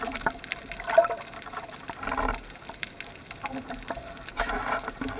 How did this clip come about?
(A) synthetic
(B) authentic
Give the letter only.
B